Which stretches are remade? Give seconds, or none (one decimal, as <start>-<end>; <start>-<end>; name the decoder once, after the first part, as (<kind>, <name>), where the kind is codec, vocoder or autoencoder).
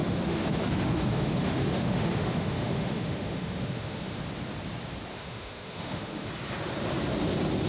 0.0-4.2 (autoencoder, DAC-VAE); 5.1-6.3